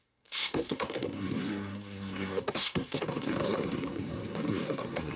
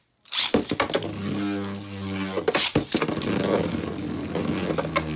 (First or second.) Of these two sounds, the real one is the second